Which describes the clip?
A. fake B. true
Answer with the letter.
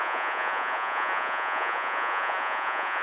A